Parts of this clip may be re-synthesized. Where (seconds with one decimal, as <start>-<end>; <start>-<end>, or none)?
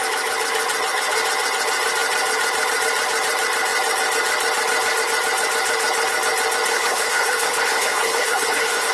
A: 6.7-8.9